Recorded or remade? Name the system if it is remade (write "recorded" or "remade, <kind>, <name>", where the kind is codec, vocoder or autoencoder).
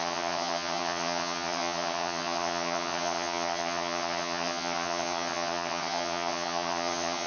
remade, vocoder, HiFi-GAN